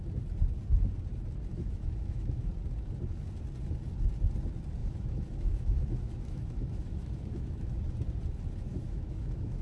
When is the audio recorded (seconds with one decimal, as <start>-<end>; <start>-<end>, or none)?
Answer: 0.0-1.5; 2.5-4.8; 7.7-8.7